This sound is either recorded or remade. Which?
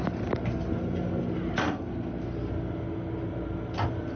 recorded